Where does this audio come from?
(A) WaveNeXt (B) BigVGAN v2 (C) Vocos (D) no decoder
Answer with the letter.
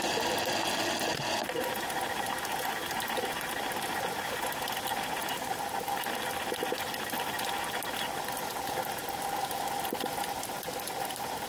D